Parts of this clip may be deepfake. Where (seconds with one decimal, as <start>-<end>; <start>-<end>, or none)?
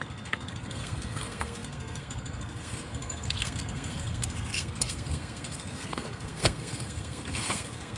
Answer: 0.0-8.0